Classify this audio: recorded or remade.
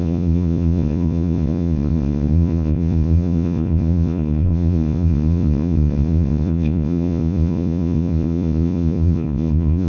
remade